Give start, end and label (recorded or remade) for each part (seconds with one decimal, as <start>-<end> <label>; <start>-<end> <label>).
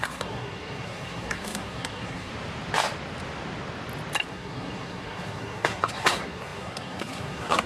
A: 0.0-2.3 remade; 2.3-4.3 recorded; 4.3-7.7 remade